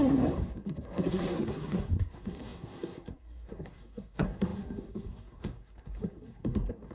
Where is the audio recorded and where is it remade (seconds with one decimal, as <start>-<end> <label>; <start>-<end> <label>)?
0.0-6.9 remade